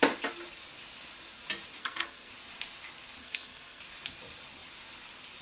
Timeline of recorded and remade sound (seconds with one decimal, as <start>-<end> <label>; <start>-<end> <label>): 0.0-1.8 recorded; 1.8-2.3 remade; 2.3-3.2 recorded; 3.2-3.8 remade; 3.8-5.4 recorded